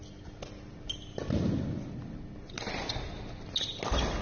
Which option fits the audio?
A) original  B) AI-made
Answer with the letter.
A